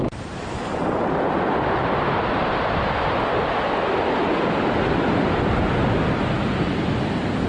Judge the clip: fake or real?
real